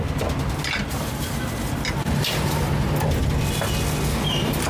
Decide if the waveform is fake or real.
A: real